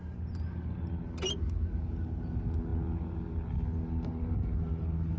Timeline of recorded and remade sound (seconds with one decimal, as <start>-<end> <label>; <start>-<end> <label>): 0.0-5.2 recorded